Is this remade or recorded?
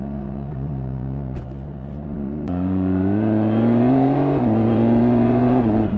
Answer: remade